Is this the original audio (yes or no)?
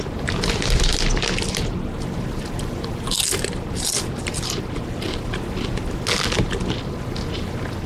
yes